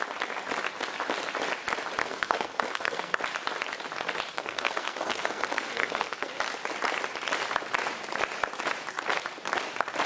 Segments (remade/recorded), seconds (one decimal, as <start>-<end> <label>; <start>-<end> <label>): 0.0-2.0 recorded; 2.0-3.2 remade; 3.2-4.3 recorded; 4.3-6.3 remade; 6.3-10.1 recorded